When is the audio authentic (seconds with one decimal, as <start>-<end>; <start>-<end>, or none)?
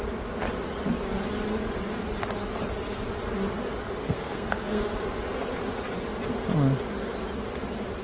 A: 0.0-4.0; 4.8-8.0